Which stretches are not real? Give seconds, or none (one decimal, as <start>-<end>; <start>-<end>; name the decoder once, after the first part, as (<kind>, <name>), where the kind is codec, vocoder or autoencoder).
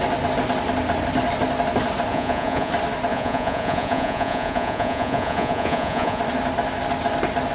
2.1-2.7 (vocoder, Vocos); 3.1-6.2